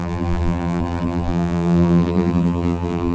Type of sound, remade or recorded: remade